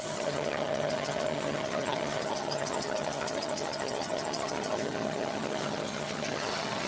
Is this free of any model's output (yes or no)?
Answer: no